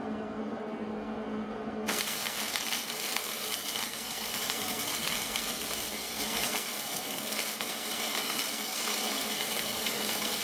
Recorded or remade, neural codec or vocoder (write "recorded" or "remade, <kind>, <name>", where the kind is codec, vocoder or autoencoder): remade, codec, SNAC